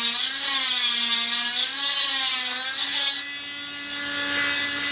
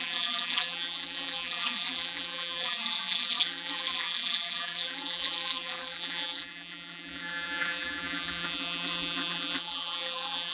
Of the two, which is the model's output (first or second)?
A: second